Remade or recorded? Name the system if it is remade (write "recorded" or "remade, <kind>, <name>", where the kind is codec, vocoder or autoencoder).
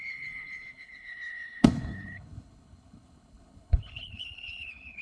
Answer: remade, codec, HILCodec